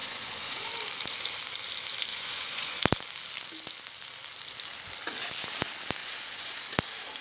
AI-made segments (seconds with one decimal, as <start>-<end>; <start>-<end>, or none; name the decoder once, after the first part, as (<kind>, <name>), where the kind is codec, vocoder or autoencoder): 0.0-0.7 (vocoder, Vocos); 2.1-2.8; 6.0-6.6